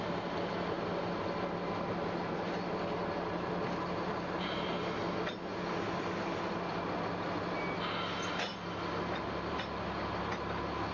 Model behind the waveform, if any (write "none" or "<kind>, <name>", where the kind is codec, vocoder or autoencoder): none